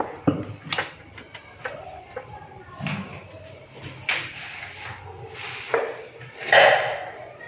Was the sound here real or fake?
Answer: real